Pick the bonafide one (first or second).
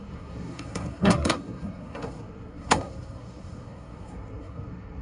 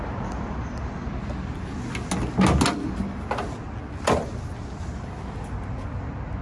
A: second